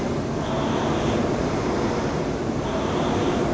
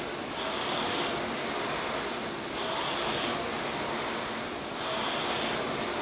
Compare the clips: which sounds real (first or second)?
second